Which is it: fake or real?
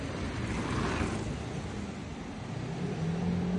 real